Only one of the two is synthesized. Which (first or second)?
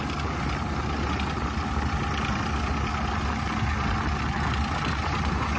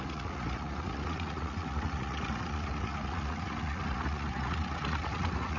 second